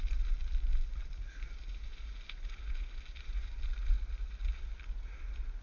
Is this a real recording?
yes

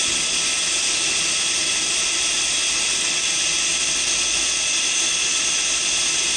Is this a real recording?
yes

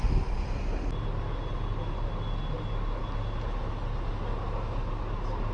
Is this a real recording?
yes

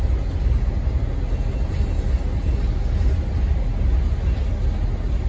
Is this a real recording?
yes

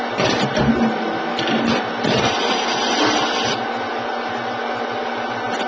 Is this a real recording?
yes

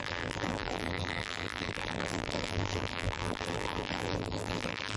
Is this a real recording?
no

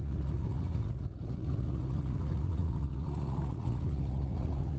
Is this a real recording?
no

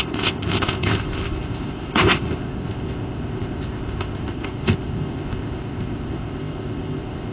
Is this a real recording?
no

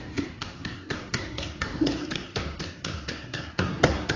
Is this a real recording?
no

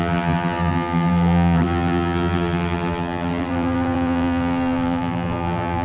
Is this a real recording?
no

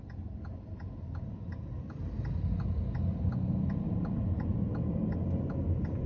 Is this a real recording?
yes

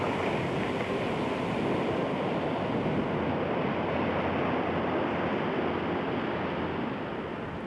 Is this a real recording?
yes